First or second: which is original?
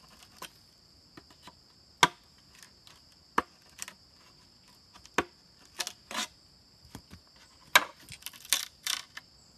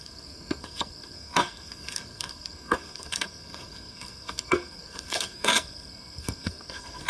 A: first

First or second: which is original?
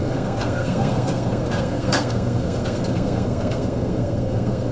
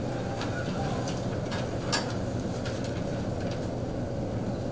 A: second